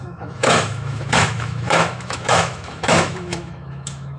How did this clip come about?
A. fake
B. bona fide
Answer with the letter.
A